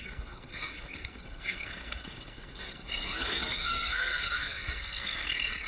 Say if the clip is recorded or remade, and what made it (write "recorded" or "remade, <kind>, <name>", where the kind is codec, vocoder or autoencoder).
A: remade, codec, SNAC